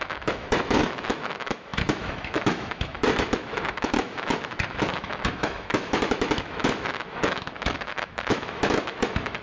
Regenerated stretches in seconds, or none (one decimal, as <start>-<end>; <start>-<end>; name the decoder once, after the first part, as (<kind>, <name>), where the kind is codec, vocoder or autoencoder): 0.0-9.4 (autoencoder, DAC-VAE)